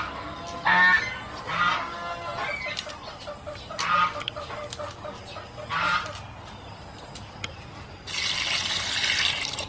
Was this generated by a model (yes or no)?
no